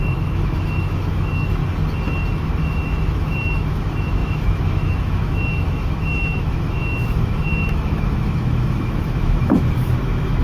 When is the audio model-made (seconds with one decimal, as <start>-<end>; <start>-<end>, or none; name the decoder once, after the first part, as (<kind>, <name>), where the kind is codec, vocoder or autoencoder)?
0.0-1.6 (autoencoder, DAC-VAE); 2.5-10.4